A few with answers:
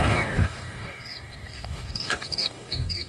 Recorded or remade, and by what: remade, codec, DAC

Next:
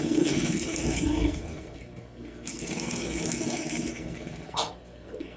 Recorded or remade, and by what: remade, codec, SNAC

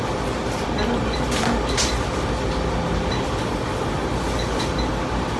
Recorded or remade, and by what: recorded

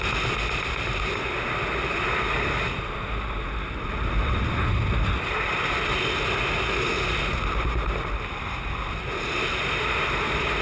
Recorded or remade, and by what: recorded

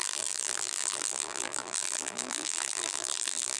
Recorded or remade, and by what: remade, vocoder, BigVGAN v2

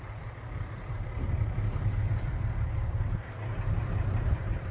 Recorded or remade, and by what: remade, vocoder, BigVGAN v2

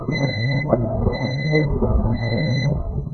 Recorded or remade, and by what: remade, codec, SNAC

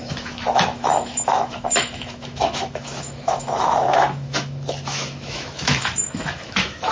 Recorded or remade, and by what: remade, autoencoder, DAC-VAE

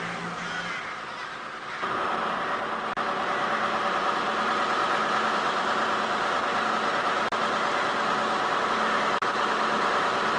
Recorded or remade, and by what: recorded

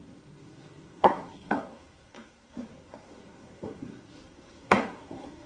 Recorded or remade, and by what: remade, codec, SNAC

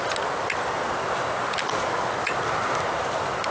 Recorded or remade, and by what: recorded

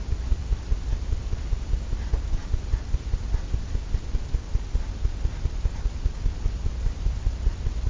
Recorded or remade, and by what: remade, vocoder, BigVGAN v2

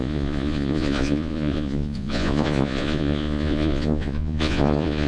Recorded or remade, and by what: remade, vocoder, Vocos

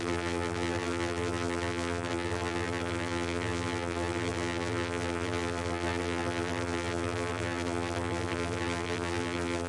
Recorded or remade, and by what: remade, vocoder, BigVGAN v2